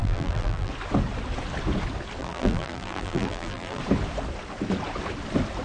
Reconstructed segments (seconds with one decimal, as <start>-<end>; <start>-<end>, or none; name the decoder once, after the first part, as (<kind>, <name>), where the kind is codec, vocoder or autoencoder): 0.0-0.7 (vocoder, BigVGAN v2); 2.2-3.8

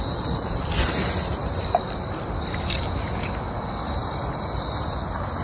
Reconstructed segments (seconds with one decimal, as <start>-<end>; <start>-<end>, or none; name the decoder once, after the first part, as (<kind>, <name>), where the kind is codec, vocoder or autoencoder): 1.3-2.9 (vocoder, BigVGAN v2); 4.0-4.7